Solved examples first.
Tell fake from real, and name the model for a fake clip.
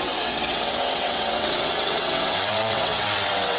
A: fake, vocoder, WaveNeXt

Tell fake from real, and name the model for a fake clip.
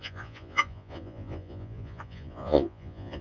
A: fake, vocoder, Vocos